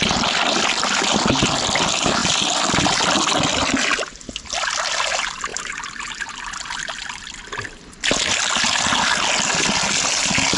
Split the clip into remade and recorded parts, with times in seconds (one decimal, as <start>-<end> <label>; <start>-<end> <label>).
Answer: 0.0-10.6 recorded